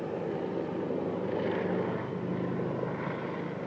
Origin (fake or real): real